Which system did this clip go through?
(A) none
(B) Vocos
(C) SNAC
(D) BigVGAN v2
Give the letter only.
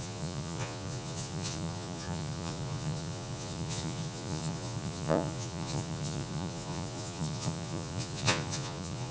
B